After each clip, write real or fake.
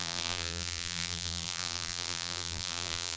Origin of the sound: fake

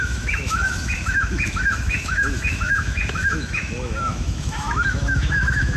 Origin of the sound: fake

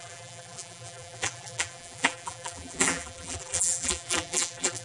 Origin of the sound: fake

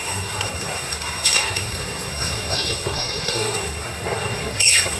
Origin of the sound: fake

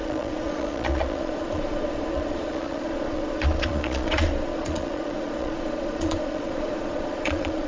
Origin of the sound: fake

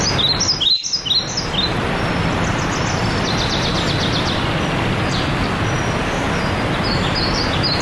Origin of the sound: real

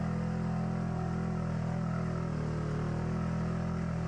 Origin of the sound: real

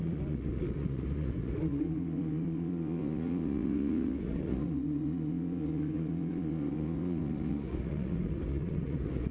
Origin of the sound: fake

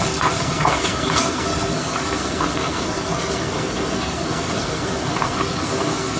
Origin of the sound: fake